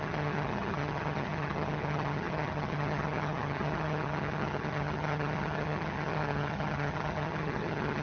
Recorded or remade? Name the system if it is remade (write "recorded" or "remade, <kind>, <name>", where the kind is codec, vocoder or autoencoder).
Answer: remade, vocoder, HiFi-GAN